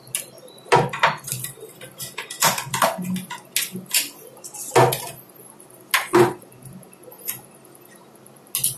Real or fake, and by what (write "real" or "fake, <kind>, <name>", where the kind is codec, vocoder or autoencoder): real